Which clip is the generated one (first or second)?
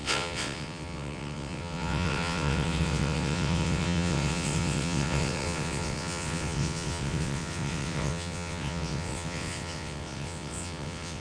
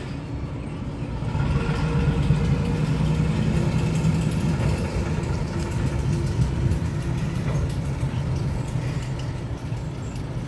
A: first